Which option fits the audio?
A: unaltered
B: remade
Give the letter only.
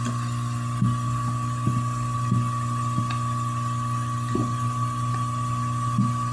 A